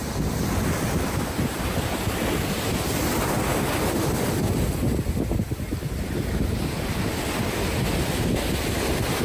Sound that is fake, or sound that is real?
real